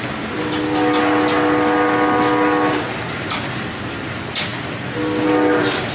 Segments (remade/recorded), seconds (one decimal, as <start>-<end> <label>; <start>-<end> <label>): 0.0-5.9 recorded